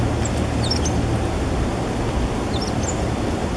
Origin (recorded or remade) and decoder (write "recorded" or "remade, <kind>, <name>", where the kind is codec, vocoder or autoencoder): recorded